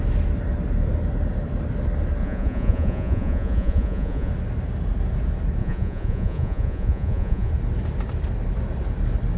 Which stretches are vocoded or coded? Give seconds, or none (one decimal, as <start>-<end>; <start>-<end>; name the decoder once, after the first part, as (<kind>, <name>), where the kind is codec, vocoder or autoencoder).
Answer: 2.2-4.3 (vocoder, Vocos); 5.6-7.5